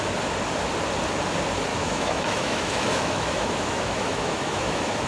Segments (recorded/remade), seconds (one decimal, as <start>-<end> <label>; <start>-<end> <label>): 0.0-1.7 recorded; 1.7-5.1 remade